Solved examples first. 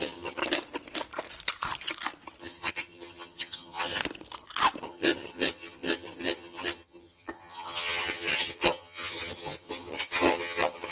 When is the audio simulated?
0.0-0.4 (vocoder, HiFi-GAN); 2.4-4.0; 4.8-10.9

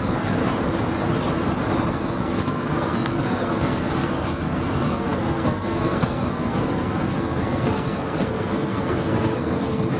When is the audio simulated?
0.0-0.4 (codec, SNAC); 1.9-10.0